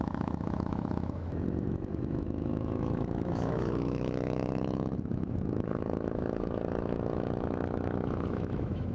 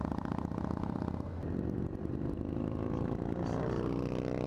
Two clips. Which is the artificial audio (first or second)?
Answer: first